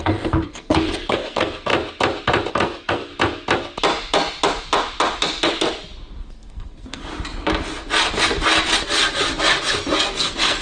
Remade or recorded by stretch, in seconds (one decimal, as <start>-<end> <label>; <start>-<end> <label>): 0.0-1.7 remade; 1.7-2.5 recorded; 2.5-3.1 remade; 3.1-6.3 recorded; 6.3-7.1 remade; 7.1-10.2 recorded; 10.2-10.6 remade

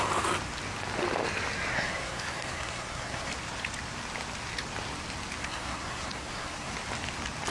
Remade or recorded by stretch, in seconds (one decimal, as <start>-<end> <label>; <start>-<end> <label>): 0.0-1.7 recorded; 1.7-3.3 remade; 3.3-5.4 recorded; 5.4-6.7 remade; 6.7-7.5 recorded

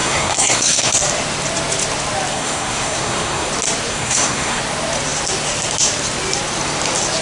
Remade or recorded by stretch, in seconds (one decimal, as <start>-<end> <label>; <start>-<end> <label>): 0.0-0.9 remade; 0.9-2.3 recorded; 2.3-3.5 remade; 3.5-3.9 recorded; 3.9-4.6 remade; 4.6-7.2 recorded

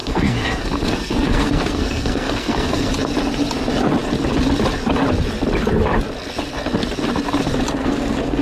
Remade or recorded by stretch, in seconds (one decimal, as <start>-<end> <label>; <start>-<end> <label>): 0.0-2.9 remade; 2.9-7.8 recorded; 7.8-8.4 remade